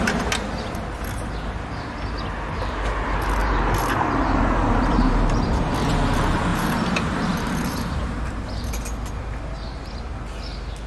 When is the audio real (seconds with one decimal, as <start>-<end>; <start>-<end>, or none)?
0.0-3.4; 5.7-6.5; 8.7-10.9